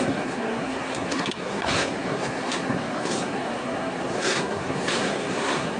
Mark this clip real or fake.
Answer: fake